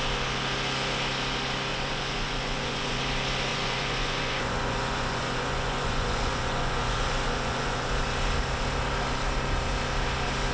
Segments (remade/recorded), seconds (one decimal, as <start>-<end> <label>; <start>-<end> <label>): 0.0-1.7 recorded; 1.7-3.0 remade; 3.0-3.5 recorded; 3.5-7.9 remade; 7.9-10.5 recorded